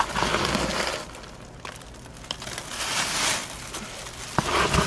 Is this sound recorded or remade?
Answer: recorded